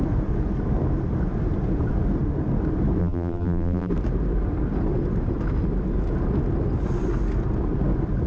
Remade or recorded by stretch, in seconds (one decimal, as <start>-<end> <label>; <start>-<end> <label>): 0.0-3.0 recorded; 3.0-3.9 remade; 3.9-8.3 recorded